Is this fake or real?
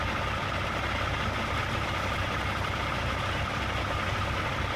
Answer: real